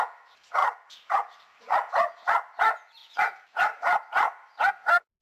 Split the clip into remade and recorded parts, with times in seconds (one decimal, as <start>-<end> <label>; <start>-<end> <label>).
0.0-0.6 recorded; 0.6-1.9 remade; 1.9-3.0 recorded; 3.0-4.7 remade; 4.7-5.2 recorded